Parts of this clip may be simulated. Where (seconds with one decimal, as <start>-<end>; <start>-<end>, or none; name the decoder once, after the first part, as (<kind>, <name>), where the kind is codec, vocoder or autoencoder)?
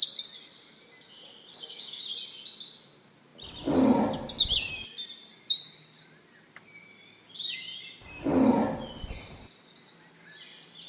1.5-2.0 (codec, DAC)